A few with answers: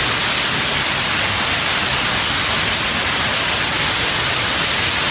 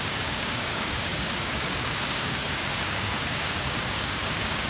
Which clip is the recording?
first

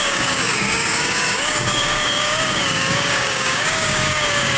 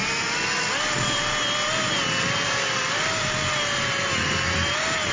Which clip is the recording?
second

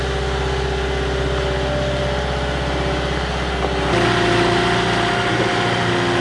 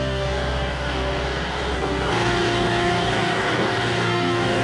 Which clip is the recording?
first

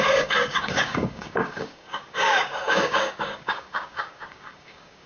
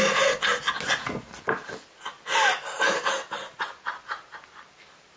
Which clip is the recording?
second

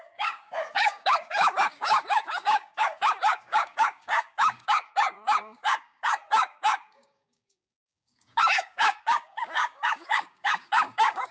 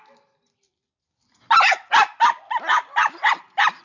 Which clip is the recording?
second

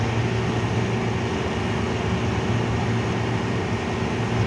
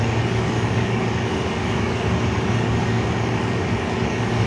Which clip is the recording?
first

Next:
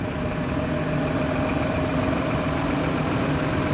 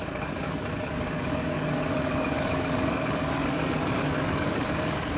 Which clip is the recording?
first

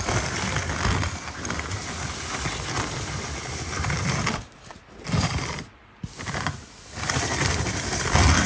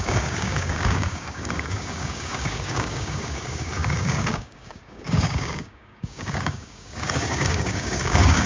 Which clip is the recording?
first